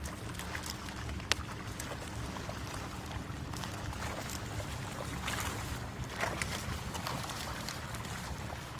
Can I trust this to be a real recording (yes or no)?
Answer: yes